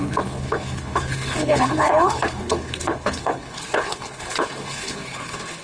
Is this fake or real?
fake